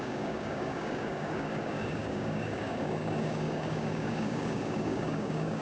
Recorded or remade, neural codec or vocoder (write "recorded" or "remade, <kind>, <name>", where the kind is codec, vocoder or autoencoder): remade, codec, DAC